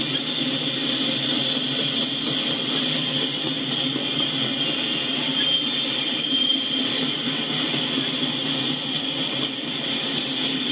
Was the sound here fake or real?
real